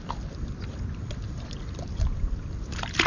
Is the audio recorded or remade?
recorded